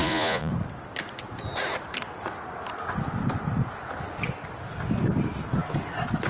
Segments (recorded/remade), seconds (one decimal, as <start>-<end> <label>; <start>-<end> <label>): 0.0-0.5 remade; 0.5-6.3 recorded